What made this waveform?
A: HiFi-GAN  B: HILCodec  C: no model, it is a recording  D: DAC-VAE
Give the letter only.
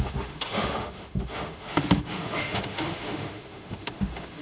D